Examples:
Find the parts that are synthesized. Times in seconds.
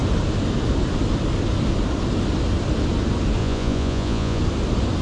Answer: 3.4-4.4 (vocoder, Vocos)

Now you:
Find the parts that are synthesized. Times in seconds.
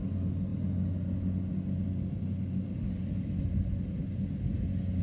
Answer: none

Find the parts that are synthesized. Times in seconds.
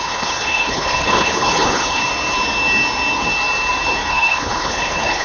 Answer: 0.0-2.0 (codec, HILCodec); 4.1-5.2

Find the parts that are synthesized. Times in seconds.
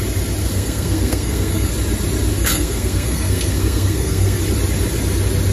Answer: 0.4-1.7 (codec, SNAC); 2.3-4.4